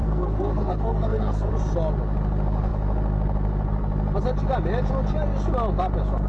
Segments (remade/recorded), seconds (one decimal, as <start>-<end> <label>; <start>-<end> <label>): 0.0-1.5 remade; 1.5-6.3 recorded